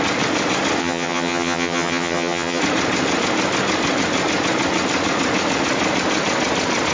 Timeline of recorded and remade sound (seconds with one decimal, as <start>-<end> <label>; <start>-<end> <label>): 0.0-0.8 recorded; 0.8-2.6 remade; 2.6-6.9 recorded